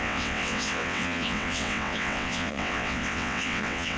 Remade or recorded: remade